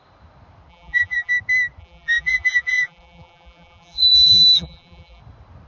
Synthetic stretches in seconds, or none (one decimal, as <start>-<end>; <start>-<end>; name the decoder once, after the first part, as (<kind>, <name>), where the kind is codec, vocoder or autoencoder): 0.7-1.3 (vocoder, BigVGAN v2); 1.8-5.2